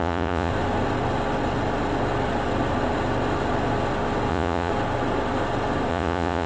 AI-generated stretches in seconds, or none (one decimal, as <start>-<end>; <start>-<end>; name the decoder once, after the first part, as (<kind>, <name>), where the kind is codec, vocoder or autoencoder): 0.0-0.5 (vocoder, Vocos); 4.3-4.7; 5.9-6.5